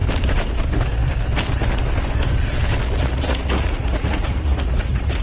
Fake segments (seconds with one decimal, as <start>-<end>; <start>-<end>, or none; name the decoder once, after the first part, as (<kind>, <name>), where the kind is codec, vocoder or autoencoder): 3.0-5.2 (vocoder, Vocos)